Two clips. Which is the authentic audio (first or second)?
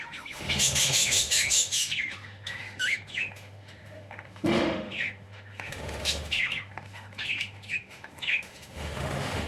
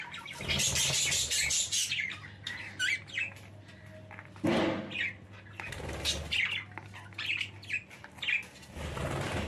second